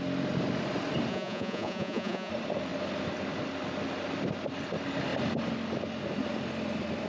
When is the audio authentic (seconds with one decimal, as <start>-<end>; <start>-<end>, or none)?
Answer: 0.0-1.1; 2.3-7.1